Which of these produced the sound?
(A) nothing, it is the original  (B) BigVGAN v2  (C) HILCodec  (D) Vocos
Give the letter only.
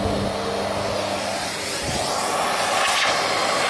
A